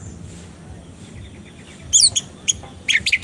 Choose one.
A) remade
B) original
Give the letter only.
B